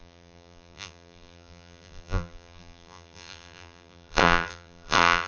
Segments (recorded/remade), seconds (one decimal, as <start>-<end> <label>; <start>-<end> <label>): 0.0-5.3 remade